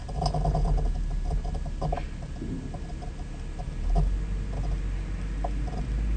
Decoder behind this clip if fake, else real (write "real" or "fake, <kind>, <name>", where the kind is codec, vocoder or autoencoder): real